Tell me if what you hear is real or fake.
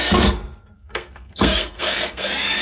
fake